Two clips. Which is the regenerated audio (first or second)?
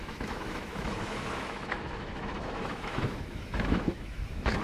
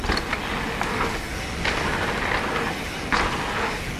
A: first